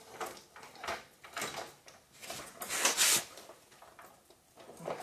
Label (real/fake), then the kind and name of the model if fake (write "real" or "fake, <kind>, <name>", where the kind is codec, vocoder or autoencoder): real